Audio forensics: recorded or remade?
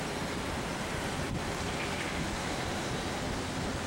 recorded